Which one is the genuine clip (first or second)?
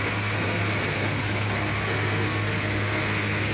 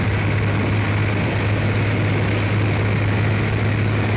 second